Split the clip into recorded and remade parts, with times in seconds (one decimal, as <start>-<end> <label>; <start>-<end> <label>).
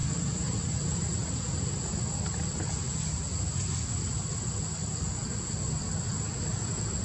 0.0-7.0 recorded